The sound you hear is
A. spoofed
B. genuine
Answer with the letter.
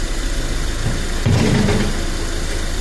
B